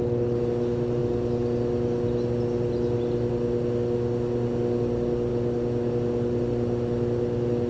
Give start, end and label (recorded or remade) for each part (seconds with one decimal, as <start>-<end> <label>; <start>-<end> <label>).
0.0-7.7 recorded